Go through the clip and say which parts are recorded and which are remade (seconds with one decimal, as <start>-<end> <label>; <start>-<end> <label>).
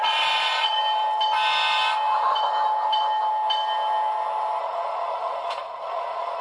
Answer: 0.0-0.8 remade; 0.8-4.6 recorded; 4.6-6.4 remade